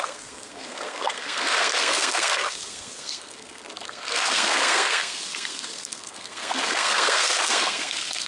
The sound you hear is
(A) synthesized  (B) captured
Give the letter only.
A